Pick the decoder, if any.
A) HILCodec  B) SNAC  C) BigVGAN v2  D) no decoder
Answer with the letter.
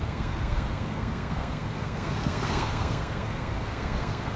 B